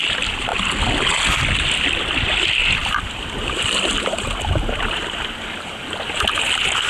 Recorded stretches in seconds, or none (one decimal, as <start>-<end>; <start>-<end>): 0.0-2.6; 6.2-6.9